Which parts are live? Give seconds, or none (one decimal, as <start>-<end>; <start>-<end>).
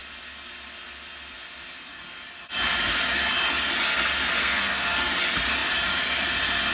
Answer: 0.0-4.4; 5.1-6.7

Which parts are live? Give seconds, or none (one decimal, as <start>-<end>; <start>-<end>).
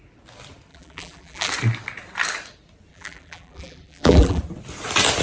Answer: 0.0-0.7; 1.5-2.9; 4.4-5.2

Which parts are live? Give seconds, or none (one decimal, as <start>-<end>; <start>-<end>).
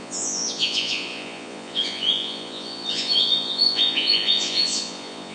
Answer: none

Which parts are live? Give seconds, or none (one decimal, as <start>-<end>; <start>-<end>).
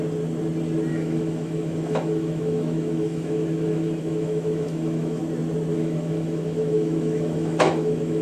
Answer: 0.0-0.9; 5.2-5.7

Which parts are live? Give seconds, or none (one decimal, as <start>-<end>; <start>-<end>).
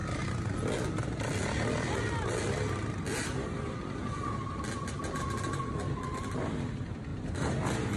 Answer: 0.0-7.1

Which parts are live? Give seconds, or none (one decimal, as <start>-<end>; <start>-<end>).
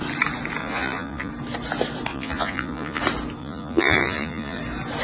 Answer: 0.0-0.6; 1.3-2.1; 3.0-3.4; 4.6-5.0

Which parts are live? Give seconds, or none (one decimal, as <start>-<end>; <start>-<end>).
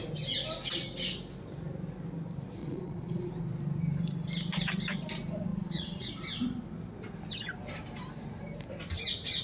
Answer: 0.0-2.6; 3.3-5.5; 6.1-9.4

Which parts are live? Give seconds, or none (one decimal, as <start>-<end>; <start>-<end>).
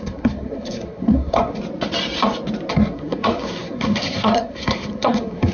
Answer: 1.6-2.7